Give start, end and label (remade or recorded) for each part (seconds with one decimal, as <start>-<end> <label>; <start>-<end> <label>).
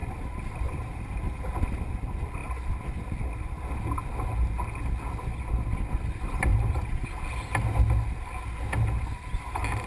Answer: 0.0-1.1 remade; 1.1-6.5 recorded; 6.5-7.1 remade; 7.1-9.9 recorded